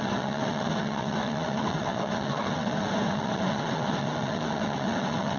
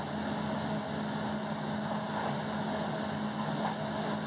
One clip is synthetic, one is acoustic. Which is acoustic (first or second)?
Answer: second